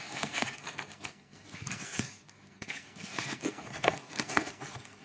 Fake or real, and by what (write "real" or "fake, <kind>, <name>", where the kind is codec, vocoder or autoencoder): fake, codec, SNAC